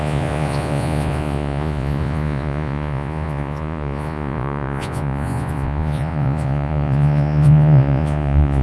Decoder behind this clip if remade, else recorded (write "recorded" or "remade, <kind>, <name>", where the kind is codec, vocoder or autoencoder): remade, vocoder, Vocos